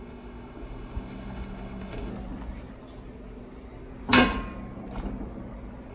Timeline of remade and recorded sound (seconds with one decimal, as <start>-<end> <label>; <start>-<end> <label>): 0.0-2.1 remade; 2.1-5.9 recorded